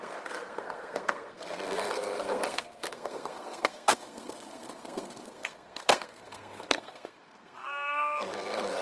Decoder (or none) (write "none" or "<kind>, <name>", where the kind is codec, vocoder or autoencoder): codec, SNAC